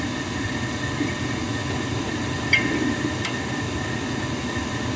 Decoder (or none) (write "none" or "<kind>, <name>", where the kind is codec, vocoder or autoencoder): none